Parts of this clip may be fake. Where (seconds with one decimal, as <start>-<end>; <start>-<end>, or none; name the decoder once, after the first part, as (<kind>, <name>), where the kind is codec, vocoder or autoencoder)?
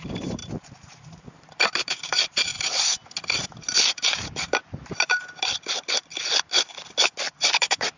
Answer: 0.0-2.5 (vocoder, BigVGAN v2); 3.9-4.6; 7.2-8.0